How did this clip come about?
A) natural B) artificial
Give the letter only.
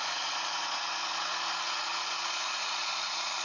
B